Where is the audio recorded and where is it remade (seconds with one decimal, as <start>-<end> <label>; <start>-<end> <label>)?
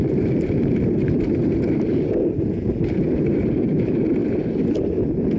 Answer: 0.0-4.2 remade; 4.2-5.4 recorded